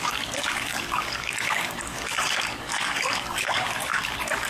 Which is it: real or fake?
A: fake